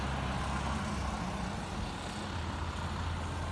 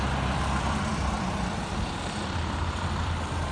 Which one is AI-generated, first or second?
second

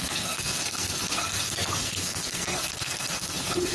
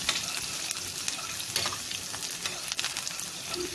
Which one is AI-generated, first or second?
first